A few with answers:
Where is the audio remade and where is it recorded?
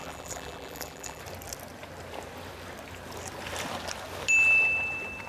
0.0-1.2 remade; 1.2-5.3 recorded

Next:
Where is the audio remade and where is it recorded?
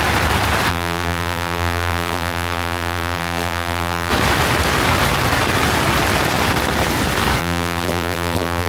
0.0-0.7 recorded; 0.7-4.1 remade; 4.1-7.4 recorded; 7.4-8.7 remade